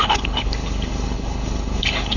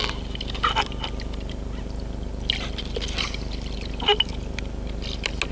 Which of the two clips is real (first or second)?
second